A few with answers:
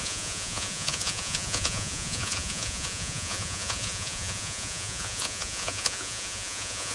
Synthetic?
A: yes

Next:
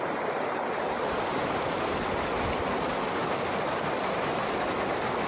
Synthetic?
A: no